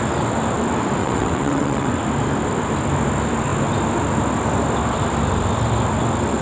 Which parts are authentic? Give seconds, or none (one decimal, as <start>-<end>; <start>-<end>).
0.0-1.0; 1.9-6.4